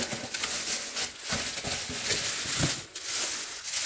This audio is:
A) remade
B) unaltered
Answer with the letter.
A